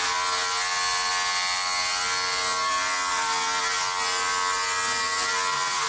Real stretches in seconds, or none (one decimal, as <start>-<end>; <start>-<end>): 0.0-5.9